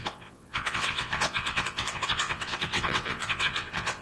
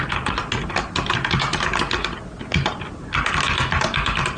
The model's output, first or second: first